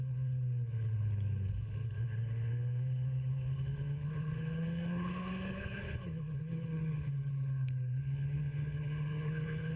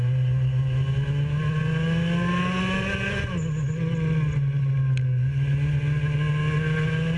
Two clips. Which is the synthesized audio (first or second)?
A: first